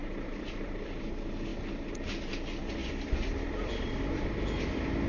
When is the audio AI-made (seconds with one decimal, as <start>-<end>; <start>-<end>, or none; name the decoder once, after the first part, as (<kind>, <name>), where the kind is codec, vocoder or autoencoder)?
0.0-1.1 (vocoder, BigVGAN v2); 2.8-5.1